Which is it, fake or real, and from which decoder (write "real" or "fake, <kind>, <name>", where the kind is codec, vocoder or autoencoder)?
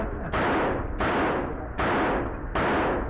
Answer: real